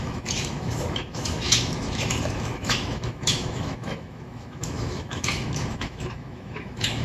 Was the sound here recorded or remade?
remade